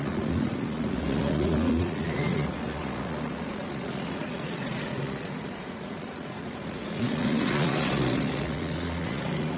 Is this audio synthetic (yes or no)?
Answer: yes